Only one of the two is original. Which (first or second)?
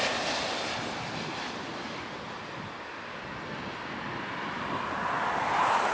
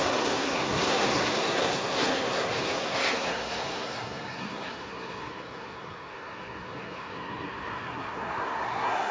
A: first